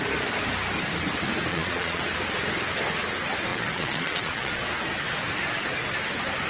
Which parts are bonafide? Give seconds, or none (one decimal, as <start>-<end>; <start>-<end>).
0.0-1.5; 2.0-3.5; 4.6-6.5